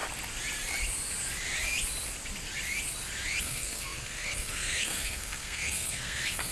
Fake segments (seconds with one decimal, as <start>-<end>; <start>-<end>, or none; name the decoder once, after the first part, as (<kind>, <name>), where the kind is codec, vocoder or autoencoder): 3.4-6.5 (codec, SNAC)